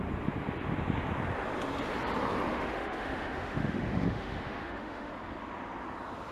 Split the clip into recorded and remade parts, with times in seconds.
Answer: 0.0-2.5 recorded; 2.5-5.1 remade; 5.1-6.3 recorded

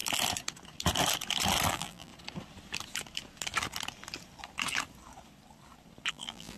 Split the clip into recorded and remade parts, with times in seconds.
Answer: 0.0-1.7 recorded; 1.7-2.1 remade; 2.1-6.1 recorded; 6.1-6.6 remade

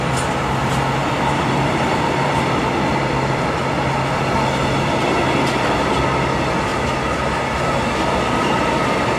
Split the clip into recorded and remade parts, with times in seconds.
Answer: 0.0-1.0 recorded; 1.0-2.4 remade; 2.4-9.2 recorded